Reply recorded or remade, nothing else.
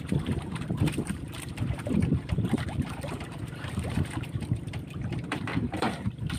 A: remade